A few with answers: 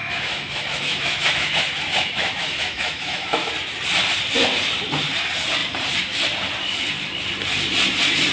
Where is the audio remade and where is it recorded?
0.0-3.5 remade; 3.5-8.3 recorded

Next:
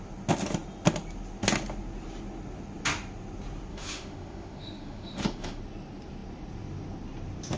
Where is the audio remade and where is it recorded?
0.0-3.7 recorded; 3.7-5.6 remade; 5.6-7.6 recorded

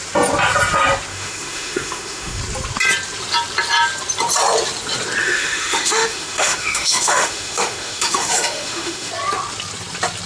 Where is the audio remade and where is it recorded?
0.0-1.1 recorded; 1.1-2.4 remade; 2.4-5.2 recorded; 5.2-9.1 remade; 9.1-10.3 recorded

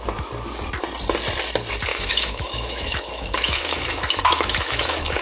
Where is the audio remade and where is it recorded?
0.0-1.9 recorded; 1.9-5.2 remade

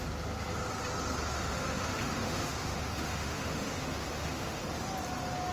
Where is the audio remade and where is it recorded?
0.0-1.3 recorded; 1.3-4.6 remade; 4.6-5.5 recorded

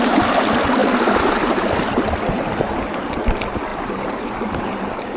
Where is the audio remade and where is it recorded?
0.0-5.2 recorded